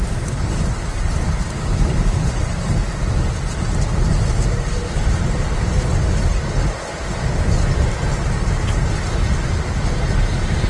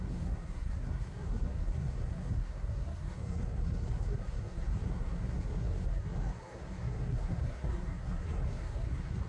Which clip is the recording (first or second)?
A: first